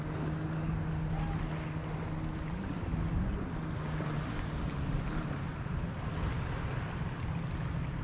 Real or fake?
real